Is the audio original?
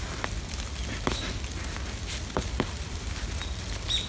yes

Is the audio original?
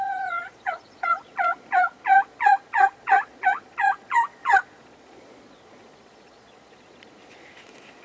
no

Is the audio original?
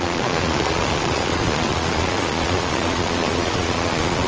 no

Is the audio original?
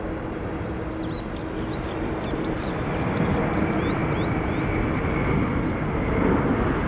yes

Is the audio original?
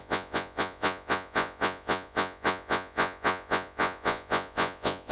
no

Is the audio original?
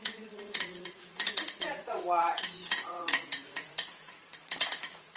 no